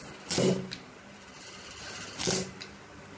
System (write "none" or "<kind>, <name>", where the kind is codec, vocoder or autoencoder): none